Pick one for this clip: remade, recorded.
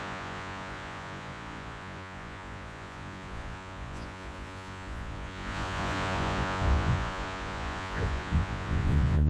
remade